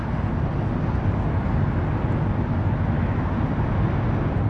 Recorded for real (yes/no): yes